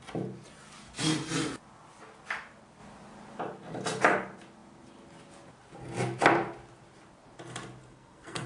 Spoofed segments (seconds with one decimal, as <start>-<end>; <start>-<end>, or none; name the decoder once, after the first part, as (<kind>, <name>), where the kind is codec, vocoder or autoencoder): 7.8-8.5 (codec, SNAC)